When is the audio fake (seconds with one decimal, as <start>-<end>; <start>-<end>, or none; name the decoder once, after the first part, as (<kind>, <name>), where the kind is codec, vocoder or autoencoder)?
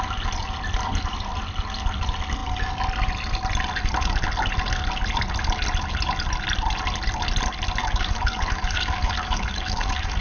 7.8-10.2 (codec, DAC)